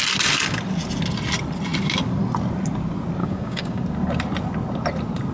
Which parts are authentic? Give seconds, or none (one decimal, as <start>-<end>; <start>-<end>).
0.0-3.2; 3.8-5.3

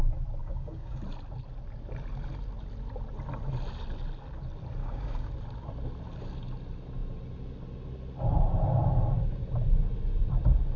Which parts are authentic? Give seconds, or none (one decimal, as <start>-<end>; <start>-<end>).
0.0-0.4; 1.0-4.8; 5.3-10.8

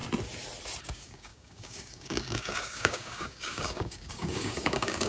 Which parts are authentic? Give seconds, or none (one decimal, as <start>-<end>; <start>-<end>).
0.0-0.8

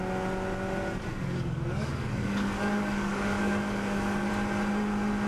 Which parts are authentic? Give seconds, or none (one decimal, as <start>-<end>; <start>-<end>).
0.0-1.1; 4.3-5.3

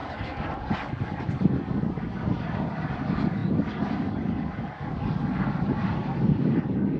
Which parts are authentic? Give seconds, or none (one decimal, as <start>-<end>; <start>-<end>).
none

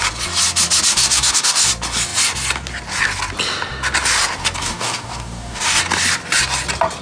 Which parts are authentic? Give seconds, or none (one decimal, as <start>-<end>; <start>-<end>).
0.0-0.9; 1.7-4.6; 5.8-7.0

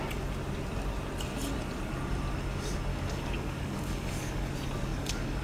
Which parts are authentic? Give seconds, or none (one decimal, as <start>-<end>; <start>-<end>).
0.0-2.9; 4.5-4.9